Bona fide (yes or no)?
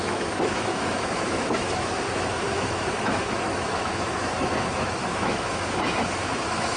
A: no